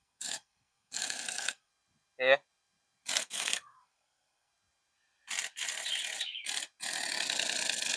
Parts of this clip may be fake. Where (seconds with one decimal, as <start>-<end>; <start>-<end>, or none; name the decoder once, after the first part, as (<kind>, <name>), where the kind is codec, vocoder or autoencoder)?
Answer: 0.0-1.7 (codec, SNAC); 3.2-4.5